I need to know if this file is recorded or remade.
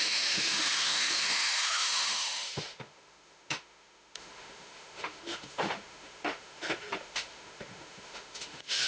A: remade